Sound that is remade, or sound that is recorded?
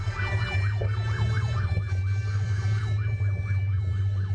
remade